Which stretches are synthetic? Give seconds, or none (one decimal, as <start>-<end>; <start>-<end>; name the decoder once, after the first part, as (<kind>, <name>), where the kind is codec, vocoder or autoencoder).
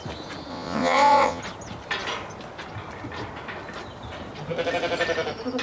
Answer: 0.5-1.4 (vocoder, WaveNeXt)